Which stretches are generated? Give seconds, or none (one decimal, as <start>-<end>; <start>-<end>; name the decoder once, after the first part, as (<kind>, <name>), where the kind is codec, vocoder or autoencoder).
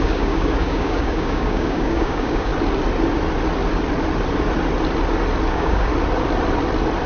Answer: 0.0-2.5 (codec, DAC); 5.5-5.9